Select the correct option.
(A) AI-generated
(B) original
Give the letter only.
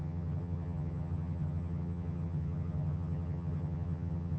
A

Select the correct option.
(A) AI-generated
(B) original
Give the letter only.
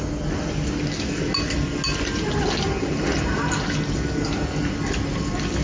B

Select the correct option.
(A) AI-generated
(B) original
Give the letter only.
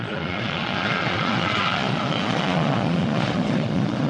A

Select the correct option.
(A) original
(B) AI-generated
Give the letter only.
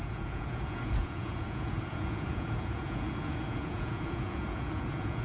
B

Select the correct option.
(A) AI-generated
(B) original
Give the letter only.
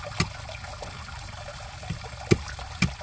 B